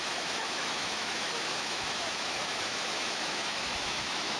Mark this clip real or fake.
fake